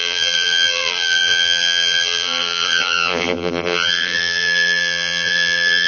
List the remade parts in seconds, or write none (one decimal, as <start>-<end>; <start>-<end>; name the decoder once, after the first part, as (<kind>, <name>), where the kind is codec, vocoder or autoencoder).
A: 0.0-5.9 (vocoder, BigVGAN v2)